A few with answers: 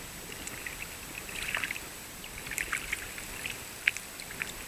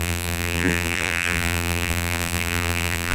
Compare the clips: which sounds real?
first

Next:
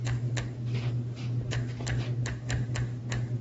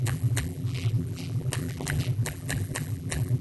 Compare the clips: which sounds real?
first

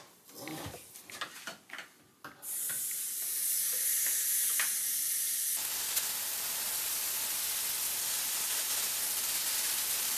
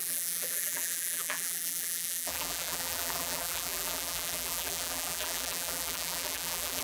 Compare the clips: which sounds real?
first